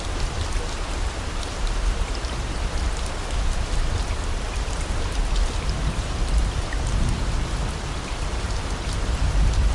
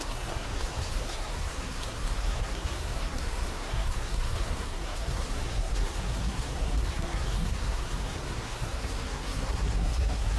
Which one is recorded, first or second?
first